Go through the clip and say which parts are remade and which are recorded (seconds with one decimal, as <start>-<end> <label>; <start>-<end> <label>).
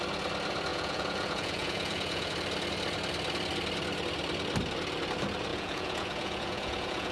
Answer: 0.0-0.7 recorded; 0.7-2.3 remade; 2.3-5.5 recorded; 5.5-7.1 remade